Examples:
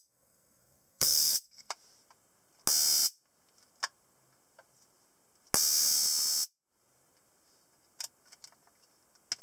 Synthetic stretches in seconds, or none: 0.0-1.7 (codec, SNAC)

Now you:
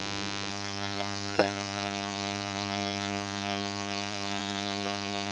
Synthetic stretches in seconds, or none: 0.5-5.3 (codec, SNAC)

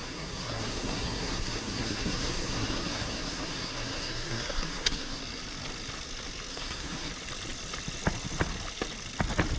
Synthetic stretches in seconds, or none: 0.0-5.2 (codec, SNAC); 6.5-7.1

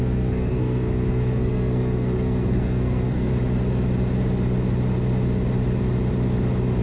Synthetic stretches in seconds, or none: 0.0-3.3 (codec, SNAC)